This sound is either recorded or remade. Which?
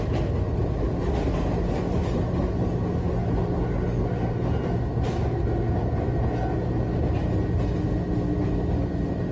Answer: recorded